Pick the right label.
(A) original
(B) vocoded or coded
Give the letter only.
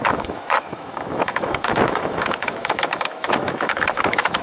B